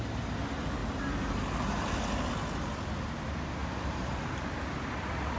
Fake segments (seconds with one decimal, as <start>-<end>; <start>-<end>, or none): 0.8-2.3; 3.6-4.2